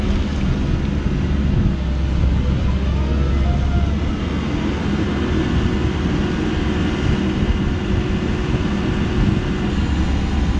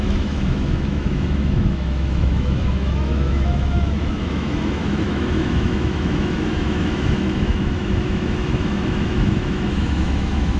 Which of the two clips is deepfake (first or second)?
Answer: second